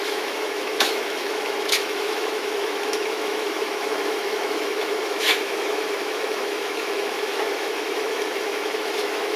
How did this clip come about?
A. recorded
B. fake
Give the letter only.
B